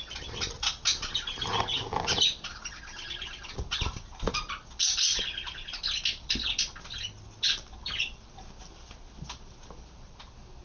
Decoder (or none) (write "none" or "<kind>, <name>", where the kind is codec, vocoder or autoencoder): none